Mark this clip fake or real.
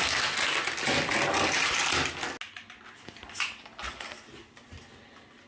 real